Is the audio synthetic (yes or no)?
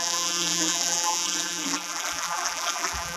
yes